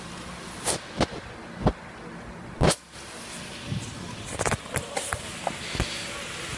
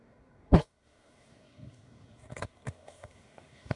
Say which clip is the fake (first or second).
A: second